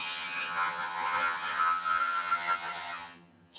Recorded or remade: remade